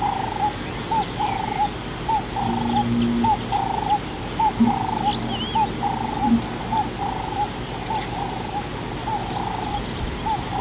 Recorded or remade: recorded